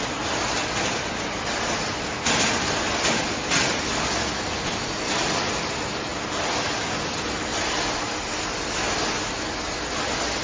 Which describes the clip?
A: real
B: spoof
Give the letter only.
A